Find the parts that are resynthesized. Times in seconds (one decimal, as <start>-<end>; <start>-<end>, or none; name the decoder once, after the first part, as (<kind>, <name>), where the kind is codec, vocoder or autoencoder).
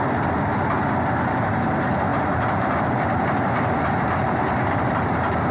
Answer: 0.0-0.5 (vocoder, BigVGAN v2); 1.3-5.5